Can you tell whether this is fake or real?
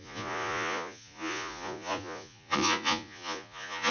fake